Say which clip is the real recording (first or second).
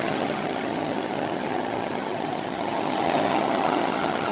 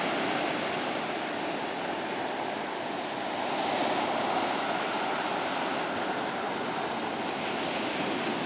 second